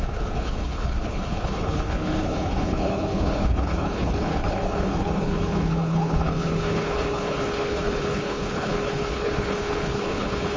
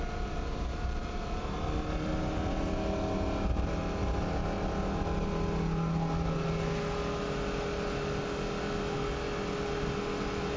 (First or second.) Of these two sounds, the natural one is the second